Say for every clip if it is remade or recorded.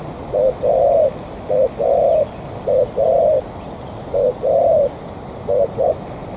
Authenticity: recorded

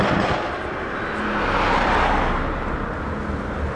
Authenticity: recorded